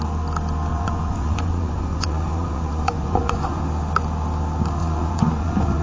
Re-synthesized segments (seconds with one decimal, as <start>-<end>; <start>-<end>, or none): 0.7-3.6; 4.8-5.8